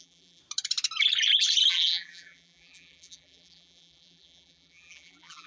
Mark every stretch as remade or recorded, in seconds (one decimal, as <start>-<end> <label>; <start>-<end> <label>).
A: 0.0-0.4 remade; 0.4-1.7 recorded; 1.7-5.5 remade